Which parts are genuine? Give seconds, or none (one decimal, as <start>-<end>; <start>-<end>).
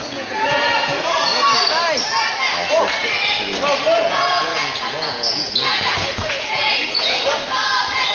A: 1.3-4.0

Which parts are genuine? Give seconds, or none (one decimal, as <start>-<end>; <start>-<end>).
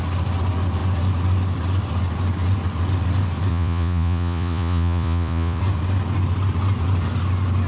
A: 0.0-3.5; 5.6-7.7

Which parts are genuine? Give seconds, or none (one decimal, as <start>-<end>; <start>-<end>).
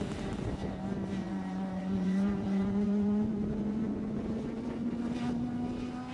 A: 0.0-1.2; 4.9-6.1